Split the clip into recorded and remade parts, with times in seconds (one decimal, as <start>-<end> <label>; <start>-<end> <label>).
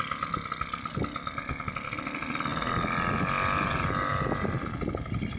0.0-5.4 recorded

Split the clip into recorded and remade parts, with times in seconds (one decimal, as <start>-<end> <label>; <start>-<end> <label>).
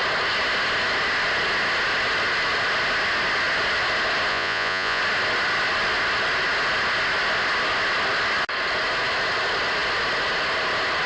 0.0-4.3 recorded; 4.3-5.0 remade; 5.0-11.1 recorded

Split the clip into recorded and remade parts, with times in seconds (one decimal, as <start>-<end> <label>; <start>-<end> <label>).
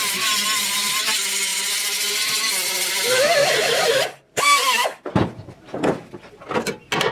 0.0-3.4 recorded; 3.4-6.4 remade; 6.4-7.1 recorded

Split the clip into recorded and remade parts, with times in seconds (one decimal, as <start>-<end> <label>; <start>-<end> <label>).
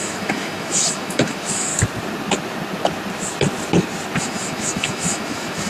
0.0-1.7 remade; 1.7-4.2 recorded; 4.2-5.7 remade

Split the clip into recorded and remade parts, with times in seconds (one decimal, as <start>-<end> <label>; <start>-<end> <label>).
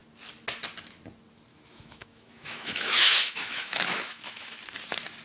0.0-1.5 recorded; 1.5-4.6 remade; 4.6-5.2 recorded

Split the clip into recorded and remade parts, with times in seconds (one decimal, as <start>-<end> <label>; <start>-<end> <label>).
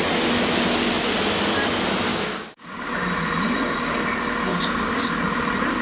0.0-2.1 recorded; 2.1-2.9 remade; 2.9-4.5 recorded; 4.5-5.1 remade; 5.1-5.8 recorded